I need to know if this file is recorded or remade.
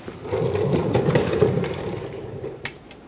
remade